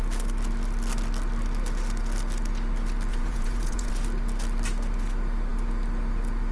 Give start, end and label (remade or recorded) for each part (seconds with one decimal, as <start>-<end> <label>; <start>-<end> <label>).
0.0-3.1 recorded; 3.1-3.9 remade; 3.9-6.5 recorded